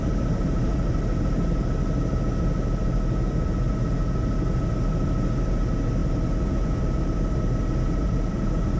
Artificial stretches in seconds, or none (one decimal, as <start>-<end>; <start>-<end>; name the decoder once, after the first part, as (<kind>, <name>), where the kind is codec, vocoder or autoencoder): none